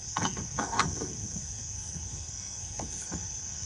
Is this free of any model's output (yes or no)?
no